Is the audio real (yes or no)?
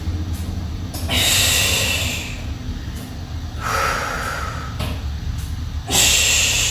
yes